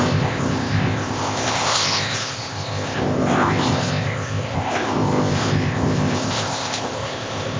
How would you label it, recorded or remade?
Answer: remade